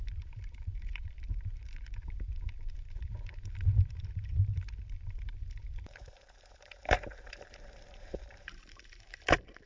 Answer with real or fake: fake